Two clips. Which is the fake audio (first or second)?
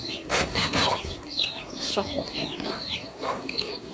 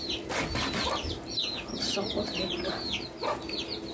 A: first